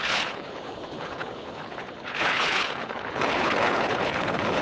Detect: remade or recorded remade